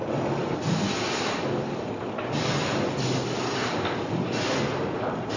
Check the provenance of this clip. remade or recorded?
recorded